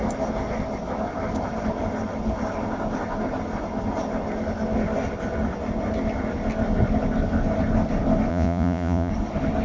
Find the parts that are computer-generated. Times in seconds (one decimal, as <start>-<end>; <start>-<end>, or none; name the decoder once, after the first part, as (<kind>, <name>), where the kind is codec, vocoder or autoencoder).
8.3-9.1 (vocoder, Vocos)